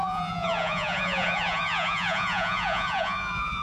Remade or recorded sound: remade